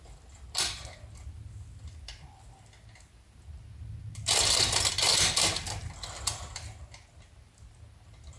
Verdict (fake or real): real